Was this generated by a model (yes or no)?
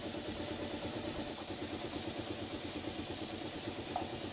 yes